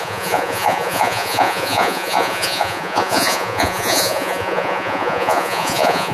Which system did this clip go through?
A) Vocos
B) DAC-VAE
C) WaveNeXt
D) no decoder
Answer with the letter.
A